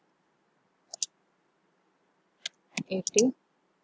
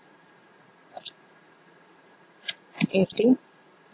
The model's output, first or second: second